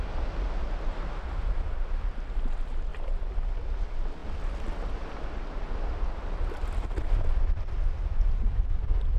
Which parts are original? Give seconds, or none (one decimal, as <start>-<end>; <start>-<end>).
0.0-9.2